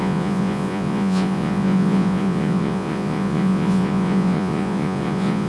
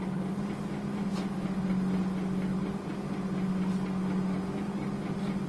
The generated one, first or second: first